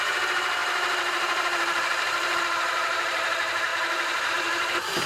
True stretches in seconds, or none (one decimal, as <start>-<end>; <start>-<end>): none